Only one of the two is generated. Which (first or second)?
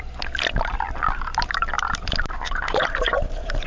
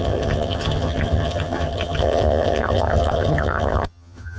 second